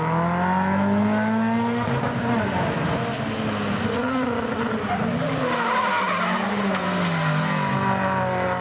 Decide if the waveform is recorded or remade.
recorded